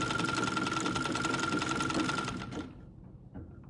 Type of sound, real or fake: real